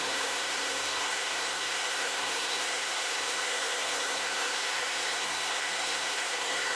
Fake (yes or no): yes